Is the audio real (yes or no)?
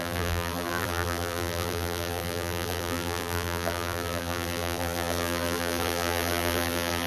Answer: no